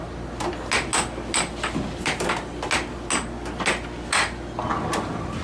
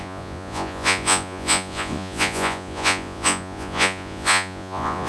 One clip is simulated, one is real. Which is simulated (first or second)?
second